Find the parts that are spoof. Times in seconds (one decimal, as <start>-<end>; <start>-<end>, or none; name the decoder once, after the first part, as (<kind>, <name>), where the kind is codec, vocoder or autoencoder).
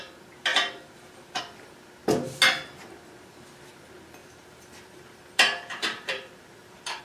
0.5-1.4 (vocoder, BigVGAN v2); 4.2-7.0